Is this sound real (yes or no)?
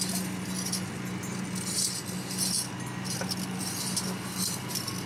yes